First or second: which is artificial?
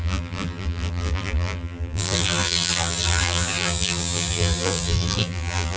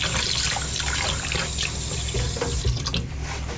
first